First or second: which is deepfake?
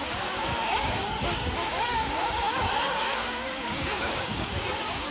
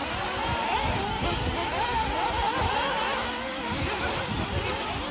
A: first